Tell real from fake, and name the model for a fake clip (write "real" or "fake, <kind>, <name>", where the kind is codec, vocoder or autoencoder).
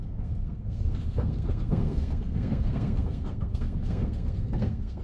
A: fake, codec, SNAC